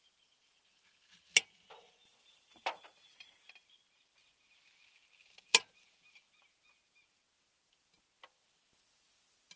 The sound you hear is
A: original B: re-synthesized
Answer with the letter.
A